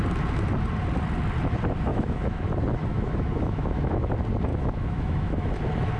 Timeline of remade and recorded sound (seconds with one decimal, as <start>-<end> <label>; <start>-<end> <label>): 0.0-1.9 recorded; 1.9-2.4 remade; 2.4-2.9 recorded; 2.9-4.1 remade; 4.1-4.5 recorded; 4.5-5.5 remade; 5.5-6.0 recorded